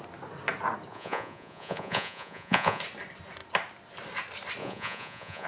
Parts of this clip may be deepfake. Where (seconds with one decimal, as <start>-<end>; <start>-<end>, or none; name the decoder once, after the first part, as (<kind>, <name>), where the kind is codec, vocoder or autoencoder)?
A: 0.9-2.8 (vocoder, Vocos); 4.6-5.5